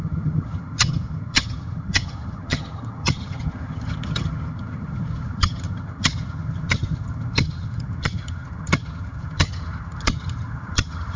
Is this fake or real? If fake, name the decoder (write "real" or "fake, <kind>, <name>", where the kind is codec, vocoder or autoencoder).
fake, vocoder, HiFi-GAN